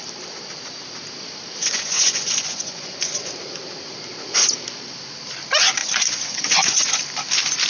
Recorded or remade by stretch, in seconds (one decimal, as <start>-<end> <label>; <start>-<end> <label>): 0.0-1.6 recorded; 1.6-3.3 remade; 3.3-5.8 recorded; 5.8-7.0 remade; 7.0-7.7 recorded